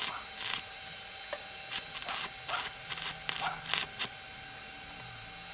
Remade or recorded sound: recorded